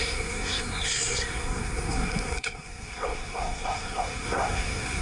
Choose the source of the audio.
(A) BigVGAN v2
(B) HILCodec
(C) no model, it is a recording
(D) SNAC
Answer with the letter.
D